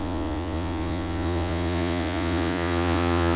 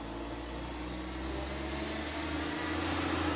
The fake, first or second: first